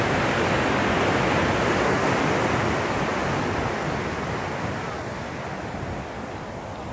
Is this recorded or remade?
recorded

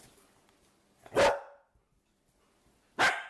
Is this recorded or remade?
recorded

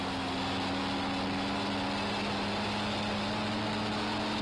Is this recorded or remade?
recorded